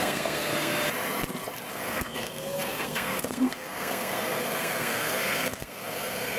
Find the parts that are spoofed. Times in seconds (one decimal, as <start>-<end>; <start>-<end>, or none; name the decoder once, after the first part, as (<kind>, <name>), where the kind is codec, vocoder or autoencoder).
0.0-0.7 (codec, SNAC); 1.7-6.4